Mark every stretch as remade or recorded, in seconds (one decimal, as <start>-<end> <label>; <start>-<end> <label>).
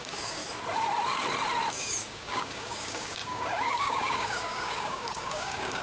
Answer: 0.0-0.4 remade; 0.4-1.7 recorded; 1.7-5.8 remade